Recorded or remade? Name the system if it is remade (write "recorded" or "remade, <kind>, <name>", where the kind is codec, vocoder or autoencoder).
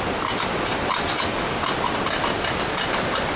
recorded